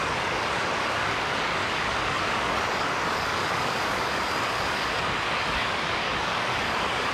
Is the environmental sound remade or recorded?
remade